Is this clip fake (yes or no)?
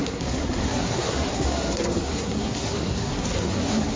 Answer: yes